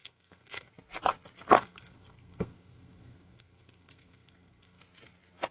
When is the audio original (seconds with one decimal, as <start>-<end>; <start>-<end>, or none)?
0.7-1.5; 4.8-5.5